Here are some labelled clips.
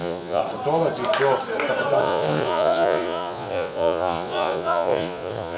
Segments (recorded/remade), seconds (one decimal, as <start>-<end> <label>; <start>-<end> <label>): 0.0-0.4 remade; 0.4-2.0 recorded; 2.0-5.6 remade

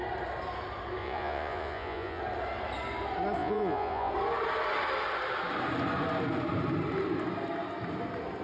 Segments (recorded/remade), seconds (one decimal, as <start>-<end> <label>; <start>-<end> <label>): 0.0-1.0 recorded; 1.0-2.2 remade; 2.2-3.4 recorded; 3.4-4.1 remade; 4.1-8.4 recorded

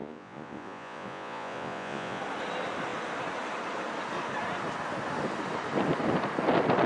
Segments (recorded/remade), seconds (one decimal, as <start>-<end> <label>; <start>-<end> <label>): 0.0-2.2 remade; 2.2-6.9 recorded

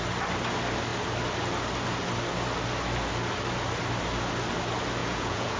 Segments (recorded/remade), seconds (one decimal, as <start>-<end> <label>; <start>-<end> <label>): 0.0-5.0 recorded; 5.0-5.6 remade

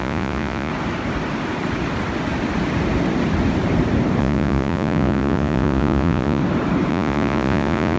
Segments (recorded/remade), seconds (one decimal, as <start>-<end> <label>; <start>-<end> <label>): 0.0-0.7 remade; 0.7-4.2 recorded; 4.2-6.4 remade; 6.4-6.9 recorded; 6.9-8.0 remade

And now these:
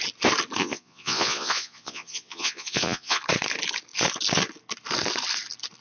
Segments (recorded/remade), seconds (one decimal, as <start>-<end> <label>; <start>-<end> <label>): 0.0-0.6 recorded; 0.6-3.2 remade; 3.2-5.8 recorded

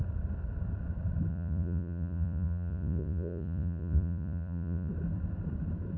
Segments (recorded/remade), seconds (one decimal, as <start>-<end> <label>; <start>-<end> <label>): 0.0-1.3 recorded; 1.3-4.9 remade; 4.9-6.0 recorded